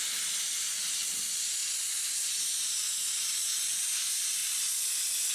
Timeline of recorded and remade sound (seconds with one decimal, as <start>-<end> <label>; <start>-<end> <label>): 0.0-5.3 recorded